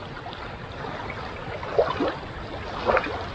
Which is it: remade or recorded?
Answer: recorded